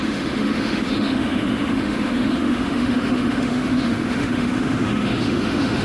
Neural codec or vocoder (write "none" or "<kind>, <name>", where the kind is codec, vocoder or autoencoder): autoencoder, DAC-VAE